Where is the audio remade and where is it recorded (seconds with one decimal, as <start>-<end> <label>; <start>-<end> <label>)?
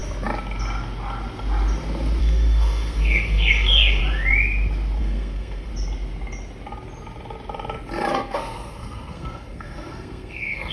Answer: 0.0-2.2 recorded; 2.2-4.0 remade; 4.0-5.0 recorded; 5.0-5.7 remade; 5.7-8.1 recorded; 8.1-10.7 remade